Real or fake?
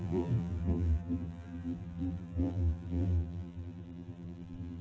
fake